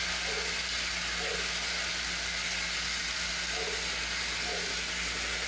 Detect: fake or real real